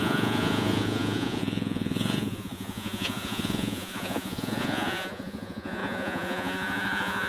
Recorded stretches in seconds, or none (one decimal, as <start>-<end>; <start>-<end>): none